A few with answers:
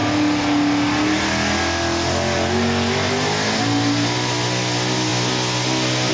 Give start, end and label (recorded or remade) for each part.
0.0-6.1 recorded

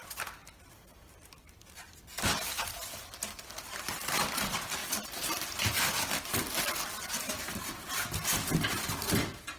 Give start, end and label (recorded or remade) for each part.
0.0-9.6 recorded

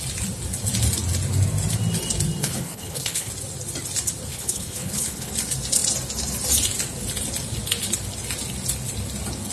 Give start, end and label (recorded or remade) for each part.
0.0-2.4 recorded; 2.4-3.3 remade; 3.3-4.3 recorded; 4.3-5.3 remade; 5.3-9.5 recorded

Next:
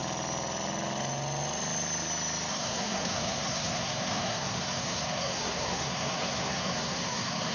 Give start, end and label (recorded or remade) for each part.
0.0-2.5 recorded; 2.5-7.5 remade

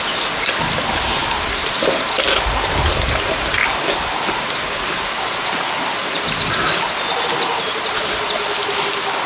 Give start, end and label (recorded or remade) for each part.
0.0-9.3 recorded

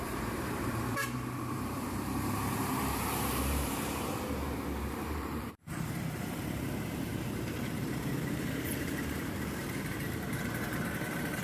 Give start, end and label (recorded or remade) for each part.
0.0-11.4 remade

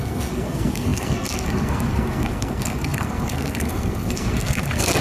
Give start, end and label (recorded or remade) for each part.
0.0-5.0 remade

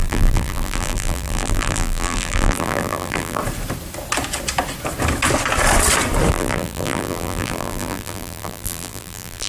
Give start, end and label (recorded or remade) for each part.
0.0-3.4 remade; 3.4-6.3 recorded; 6.3-9.5 remade